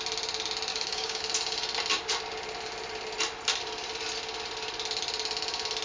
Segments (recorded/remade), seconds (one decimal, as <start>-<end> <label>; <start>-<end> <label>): 0.0-0.7 recorded; 0.7-1.2 remade; 1.2-5.8 recorded